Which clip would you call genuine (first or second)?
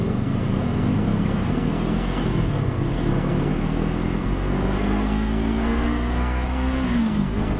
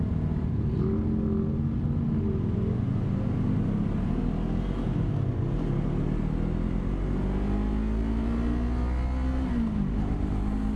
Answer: second